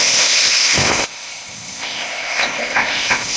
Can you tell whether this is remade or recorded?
remade